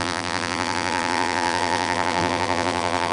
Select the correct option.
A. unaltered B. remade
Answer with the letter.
B